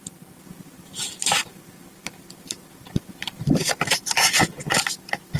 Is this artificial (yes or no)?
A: yes